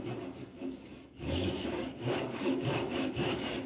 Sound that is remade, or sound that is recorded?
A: remade